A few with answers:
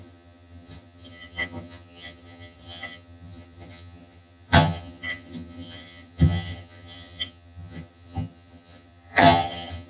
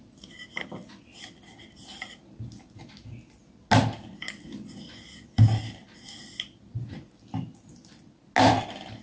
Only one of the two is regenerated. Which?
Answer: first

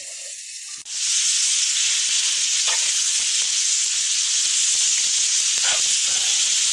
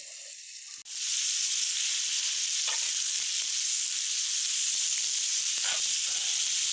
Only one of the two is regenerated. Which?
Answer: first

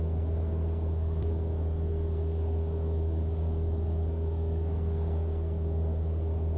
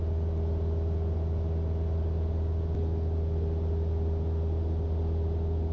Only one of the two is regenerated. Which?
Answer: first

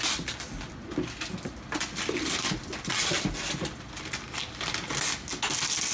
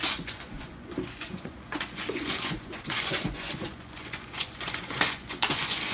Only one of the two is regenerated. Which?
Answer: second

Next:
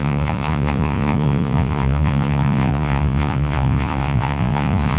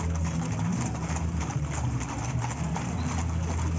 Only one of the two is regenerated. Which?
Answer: first